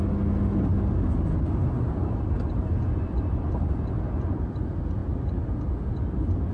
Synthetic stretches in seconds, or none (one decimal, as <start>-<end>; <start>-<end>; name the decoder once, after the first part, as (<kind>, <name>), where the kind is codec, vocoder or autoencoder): none